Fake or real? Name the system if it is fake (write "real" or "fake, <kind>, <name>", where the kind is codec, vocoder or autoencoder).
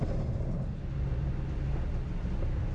real